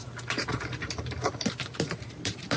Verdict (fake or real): real